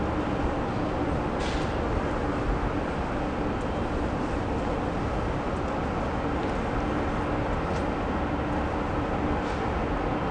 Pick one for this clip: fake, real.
real